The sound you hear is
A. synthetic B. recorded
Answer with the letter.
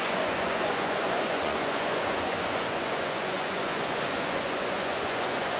A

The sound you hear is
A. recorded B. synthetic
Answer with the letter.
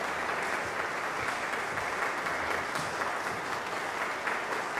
A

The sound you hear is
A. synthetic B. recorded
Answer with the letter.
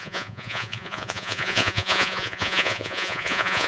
A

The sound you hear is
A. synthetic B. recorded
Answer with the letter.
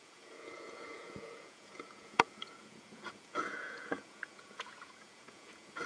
A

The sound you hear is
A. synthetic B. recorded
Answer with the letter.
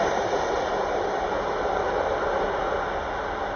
B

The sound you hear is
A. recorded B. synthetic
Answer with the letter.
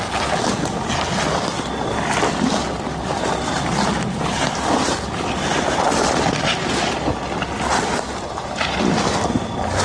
A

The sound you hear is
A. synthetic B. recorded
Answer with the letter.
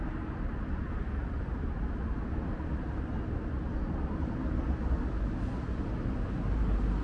B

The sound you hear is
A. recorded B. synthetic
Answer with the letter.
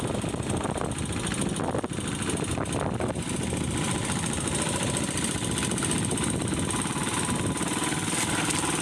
A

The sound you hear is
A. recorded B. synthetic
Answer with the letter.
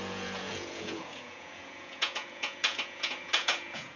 B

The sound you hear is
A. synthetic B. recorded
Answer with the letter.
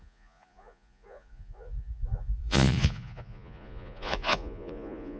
A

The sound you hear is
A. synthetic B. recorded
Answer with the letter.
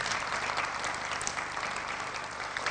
B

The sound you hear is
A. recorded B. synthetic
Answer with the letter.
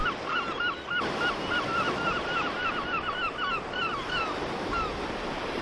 A